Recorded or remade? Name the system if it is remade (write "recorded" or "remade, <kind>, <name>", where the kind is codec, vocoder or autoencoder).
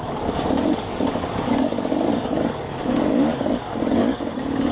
remade, codec, DAC